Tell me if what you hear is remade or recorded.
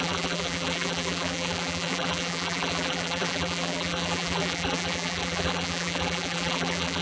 remade